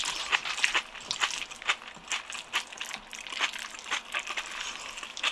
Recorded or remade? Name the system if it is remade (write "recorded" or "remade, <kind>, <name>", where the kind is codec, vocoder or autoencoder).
recorded